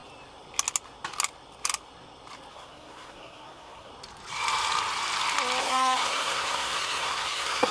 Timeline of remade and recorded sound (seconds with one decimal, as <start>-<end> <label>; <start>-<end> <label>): 0.0-2.5 recorded; 2.5-3.9 remade; 3.9-5.6 recorded; 5.6-7.7 remade